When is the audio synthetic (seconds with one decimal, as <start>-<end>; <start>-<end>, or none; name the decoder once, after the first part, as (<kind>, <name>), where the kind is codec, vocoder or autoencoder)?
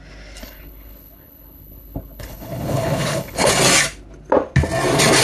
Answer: 0.4-3.5 (codec, HILCodec)